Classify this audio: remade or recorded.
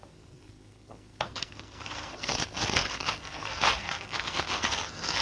remade